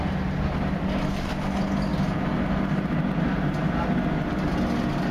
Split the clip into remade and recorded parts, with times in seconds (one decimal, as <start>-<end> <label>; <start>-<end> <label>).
0.0-5.1 recorded